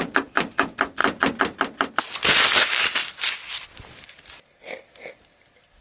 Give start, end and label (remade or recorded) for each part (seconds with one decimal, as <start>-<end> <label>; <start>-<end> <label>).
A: 0.0-2.5 recorded; 2.5-3.1 remade; 3.1-5.8 recorded